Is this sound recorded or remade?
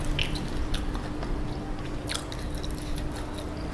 recorded